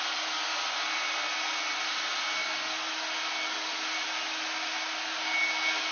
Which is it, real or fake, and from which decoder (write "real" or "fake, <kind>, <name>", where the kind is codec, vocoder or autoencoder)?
real